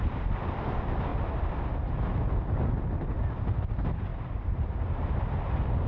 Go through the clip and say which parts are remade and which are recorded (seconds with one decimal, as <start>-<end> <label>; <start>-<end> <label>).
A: 0.0-1.1 recorded; 1.1-1.6 remade; 1.6-4.1 recorded; 4.1-5.9 remade